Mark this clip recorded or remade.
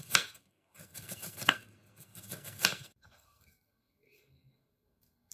remade